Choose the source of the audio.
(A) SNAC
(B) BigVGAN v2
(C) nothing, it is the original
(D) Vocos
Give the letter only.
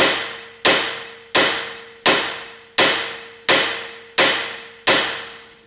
C